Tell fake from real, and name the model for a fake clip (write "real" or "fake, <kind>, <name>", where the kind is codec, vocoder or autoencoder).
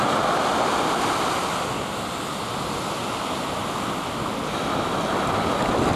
real